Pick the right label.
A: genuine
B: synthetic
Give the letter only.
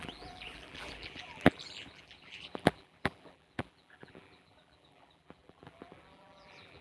B